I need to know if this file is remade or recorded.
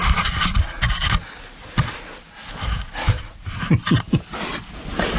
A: recorded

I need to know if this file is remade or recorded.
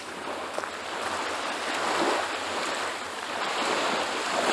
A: recorded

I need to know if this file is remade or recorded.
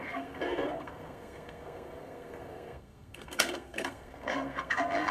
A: remade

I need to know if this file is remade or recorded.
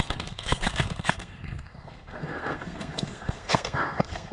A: remade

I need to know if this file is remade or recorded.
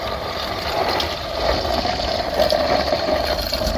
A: recorded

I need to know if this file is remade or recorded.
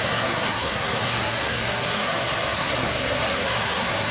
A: remade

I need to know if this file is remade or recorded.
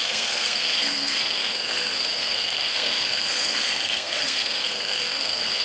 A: remade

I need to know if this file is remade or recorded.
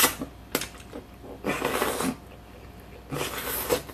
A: recorded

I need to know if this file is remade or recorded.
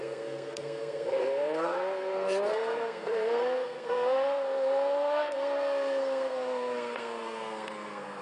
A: remade